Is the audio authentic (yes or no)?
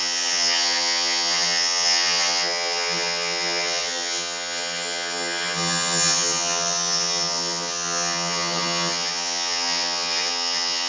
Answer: no